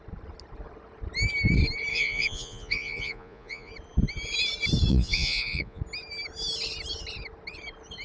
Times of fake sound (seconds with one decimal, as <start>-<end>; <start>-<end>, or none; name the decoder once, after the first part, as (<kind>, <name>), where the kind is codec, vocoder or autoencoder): 1.9-3.7 (vocoder, Vocos); 4.9-5.8